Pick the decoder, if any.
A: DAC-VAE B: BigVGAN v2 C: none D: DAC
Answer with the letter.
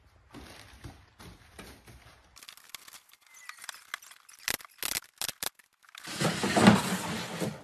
C